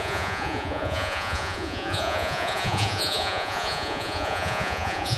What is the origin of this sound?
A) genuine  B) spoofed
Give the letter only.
B